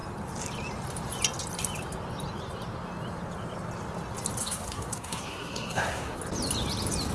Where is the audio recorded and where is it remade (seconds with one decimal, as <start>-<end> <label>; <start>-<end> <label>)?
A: 0.0-4.4 recorded; 4.4-6.2 remade; 6.2-7.1 recorded